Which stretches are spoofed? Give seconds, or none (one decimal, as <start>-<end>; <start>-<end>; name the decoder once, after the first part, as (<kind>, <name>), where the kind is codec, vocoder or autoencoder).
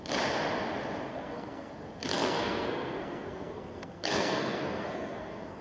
1.1-1.7 (codec, SNAC); 2.1-5.6